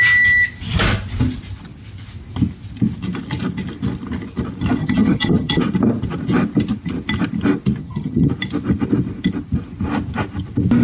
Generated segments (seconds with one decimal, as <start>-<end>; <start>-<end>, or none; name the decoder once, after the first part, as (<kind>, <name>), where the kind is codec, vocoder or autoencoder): 4.8-5.6 (vocoder, HiFi-GAN); 7.8-8.3